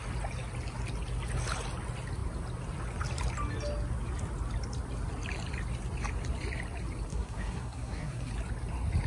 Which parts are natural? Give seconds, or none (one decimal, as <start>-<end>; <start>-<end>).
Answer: 0.0-7.1; 8.3-9.1